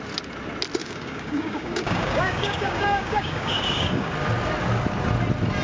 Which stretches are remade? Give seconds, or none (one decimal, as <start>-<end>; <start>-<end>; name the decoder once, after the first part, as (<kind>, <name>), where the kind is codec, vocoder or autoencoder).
0.8-4.1 (codec, DAC)